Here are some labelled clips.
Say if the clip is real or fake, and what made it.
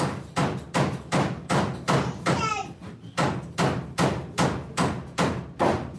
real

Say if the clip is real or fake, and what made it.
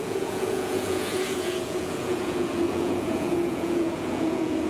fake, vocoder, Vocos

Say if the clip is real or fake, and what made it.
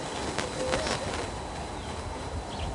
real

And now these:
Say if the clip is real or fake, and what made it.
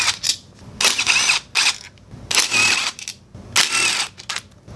real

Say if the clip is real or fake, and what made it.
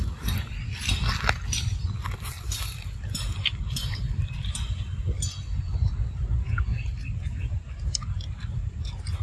real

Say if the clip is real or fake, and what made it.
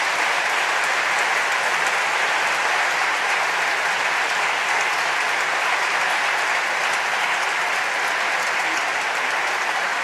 real